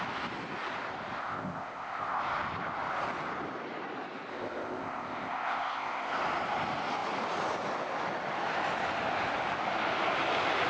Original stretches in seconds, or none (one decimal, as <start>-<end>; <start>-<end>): 0.0-1.2; 2.2-4.3; 6.2-10.7